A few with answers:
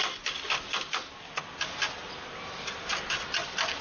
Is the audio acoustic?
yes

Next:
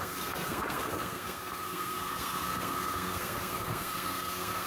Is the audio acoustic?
no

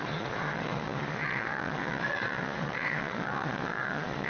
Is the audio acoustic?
no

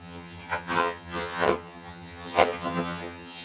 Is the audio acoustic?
no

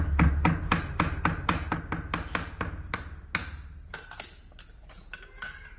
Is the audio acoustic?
yes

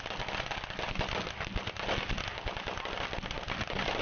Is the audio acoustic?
yes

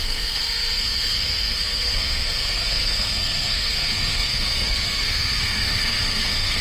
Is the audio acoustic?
no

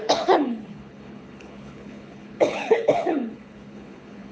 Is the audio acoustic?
no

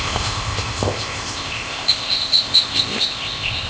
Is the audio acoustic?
no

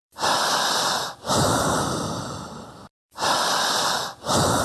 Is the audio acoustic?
no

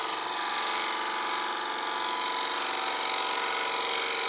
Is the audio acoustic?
yes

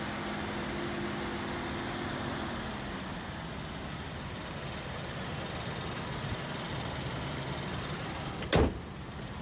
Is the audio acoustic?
yes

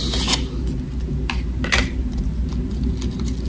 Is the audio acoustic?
yes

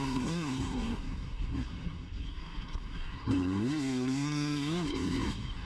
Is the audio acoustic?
no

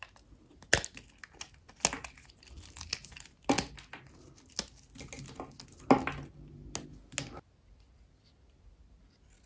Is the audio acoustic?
yes